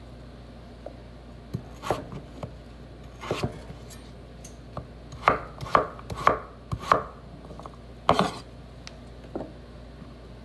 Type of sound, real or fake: real